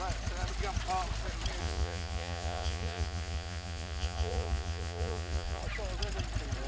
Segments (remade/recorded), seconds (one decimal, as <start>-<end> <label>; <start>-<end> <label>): 0.0-1.6 recorded; 1.6-5.6 remade; 5.6-6.7 recorded